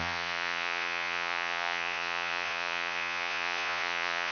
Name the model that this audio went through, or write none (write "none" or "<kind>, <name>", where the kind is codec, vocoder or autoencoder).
vocoder, Vocos